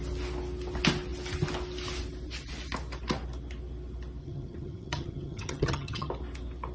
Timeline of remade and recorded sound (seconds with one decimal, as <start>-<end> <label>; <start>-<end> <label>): 0.0-4.2 recorded; 4.2-6.1 remade; 6.1-6.7 recorded